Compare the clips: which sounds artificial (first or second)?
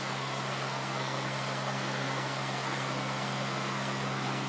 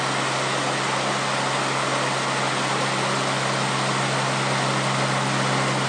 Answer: first